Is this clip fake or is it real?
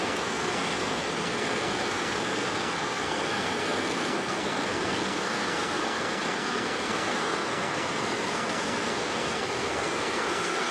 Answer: fake